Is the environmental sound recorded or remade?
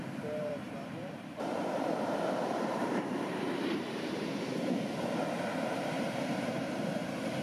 remade